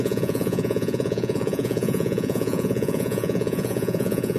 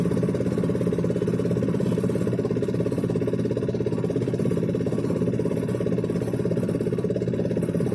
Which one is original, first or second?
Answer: second